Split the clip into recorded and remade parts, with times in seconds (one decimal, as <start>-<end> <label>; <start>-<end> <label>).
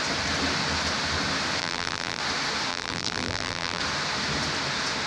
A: 0.0-1.6 recorded; 1.6-2.2 remade; 2.2-2.7 recorded; 2.7-3.8 remade; 3.8-5.1 recorded